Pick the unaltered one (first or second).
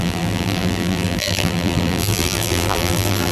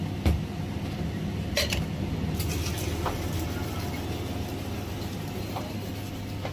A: second